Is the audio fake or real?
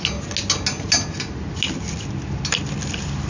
real